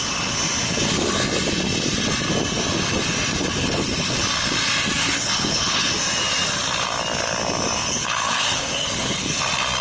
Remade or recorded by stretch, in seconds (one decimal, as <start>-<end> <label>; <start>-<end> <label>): 0.0-3.6 recorded; 3.6-4.2 remade; 4.2-5.0 recorded; 5.0-5.9 remade; 5.9-7.8 recorded; 7.8-9.4 remade; 9.4-9.8 recorded

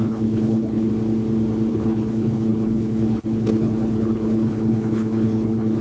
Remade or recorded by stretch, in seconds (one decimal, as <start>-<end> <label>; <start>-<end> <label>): 0.0-0.9 remade; 0.9-1.7 recorded; 1.7-5.8 remade